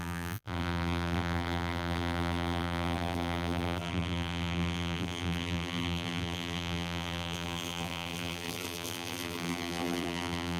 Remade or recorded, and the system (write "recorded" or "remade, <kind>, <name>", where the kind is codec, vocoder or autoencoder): remade, vocoder, BigVGAN v2